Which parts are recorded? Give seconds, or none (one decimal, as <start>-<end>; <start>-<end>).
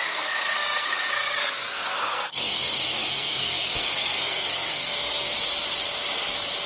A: 5.3-6.7